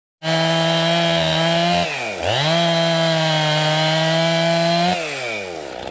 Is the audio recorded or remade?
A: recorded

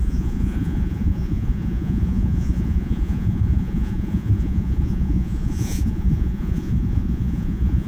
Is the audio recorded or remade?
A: remade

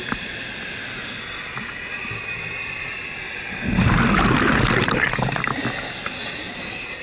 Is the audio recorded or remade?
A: recorded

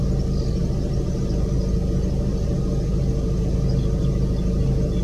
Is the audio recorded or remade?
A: recorded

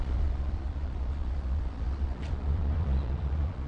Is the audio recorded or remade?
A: remade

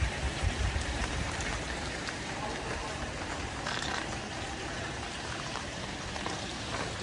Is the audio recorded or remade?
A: remade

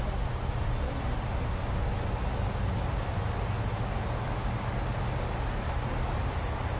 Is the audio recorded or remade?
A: recorded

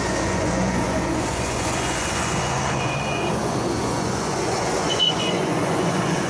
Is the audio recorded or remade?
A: remade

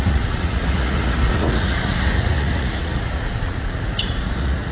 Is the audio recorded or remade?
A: remade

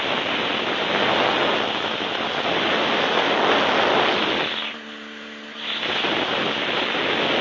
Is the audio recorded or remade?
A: recorded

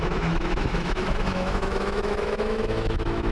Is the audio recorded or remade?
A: remade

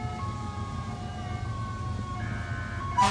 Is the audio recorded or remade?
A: recorded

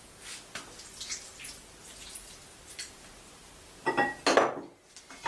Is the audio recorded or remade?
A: recorded